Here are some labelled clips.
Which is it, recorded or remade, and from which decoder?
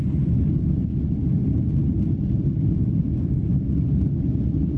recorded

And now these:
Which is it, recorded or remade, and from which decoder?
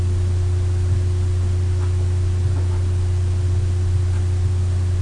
recorded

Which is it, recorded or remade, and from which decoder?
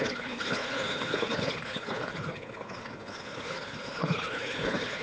remade, codec, HILCodec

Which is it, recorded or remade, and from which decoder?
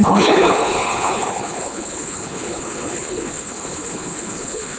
remade, codec, HILCodec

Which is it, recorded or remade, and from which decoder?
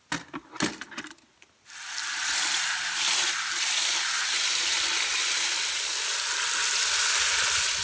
recorded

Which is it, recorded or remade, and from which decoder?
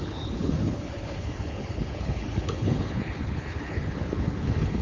remade, codec, HILCodec